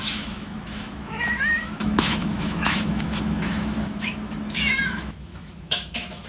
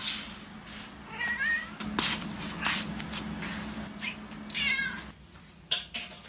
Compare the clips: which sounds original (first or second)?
second